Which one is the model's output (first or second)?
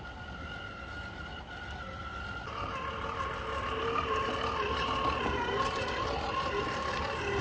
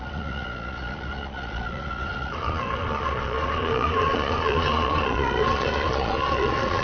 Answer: second